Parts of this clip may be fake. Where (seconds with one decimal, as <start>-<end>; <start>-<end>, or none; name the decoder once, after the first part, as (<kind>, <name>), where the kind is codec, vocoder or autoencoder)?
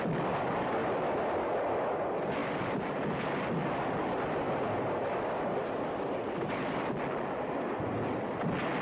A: none